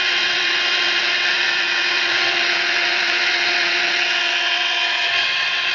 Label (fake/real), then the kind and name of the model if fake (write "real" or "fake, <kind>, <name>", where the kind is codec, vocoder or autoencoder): fake, vocoder, WaveNeXt